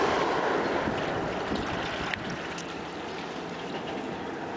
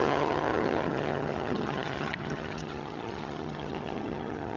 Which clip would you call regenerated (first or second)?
second